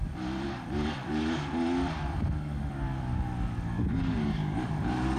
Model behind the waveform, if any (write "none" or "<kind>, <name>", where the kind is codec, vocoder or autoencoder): codec, DAC